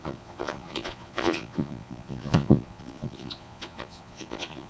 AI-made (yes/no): yes